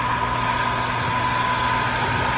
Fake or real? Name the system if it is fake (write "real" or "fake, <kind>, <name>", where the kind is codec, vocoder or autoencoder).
real